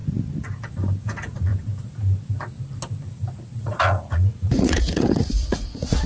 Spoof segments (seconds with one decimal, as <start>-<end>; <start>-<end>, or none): 1.0-1.5; 3.6-6.1